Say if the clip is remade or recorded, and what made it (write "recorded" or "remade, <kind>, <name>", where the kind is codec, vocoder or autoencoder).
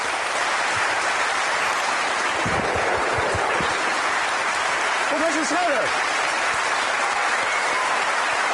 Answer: remade, vocoder, BigVGAN v2